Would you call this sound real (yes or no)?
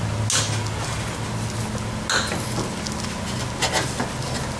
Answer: yes